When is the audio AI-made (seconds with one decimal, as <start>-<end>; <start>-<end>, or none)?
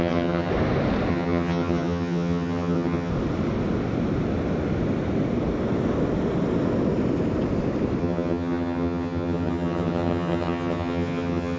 0.0-0.5; 1.1-3.1; 8.0-11.6